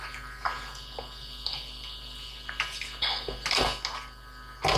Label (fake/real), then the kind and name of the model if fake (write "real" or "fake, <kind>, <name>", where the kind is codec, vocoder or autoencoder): real